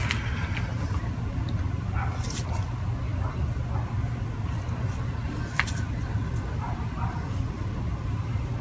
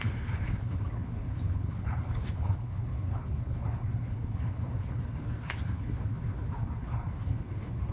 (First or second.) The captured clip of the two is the first